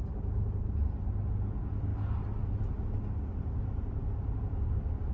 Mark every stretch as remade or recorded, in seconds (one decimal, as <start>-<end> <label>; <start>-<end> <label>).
0.0-5.1 recorded